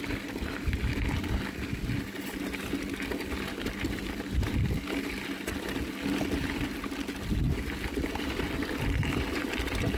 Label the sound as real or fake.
real